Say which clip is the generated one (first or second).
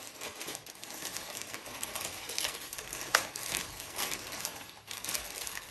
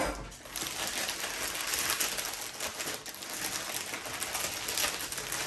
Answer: first